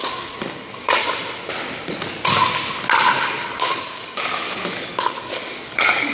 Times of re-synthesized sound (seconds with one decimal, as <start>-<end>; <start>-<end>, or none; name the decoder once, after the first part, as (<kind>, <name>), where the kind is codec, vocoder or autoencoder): 0.0-1.0 (codec, DAC); 3.2-6.1